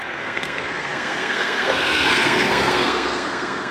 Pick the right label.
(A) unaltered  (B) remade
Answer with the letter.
B